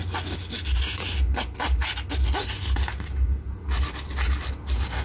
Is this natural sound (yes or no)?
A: yes